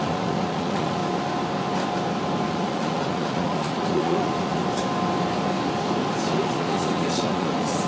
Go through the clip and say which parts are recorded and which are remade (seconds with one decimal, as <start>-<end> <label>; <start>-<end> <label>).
0.0-1.0 remade; 1.0-2.5 recorded; 2.5-4.6 remade; 4.6-6.3 recorded; 6.3-7.9 remade